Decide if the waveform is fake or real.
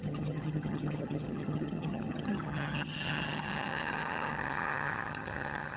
fake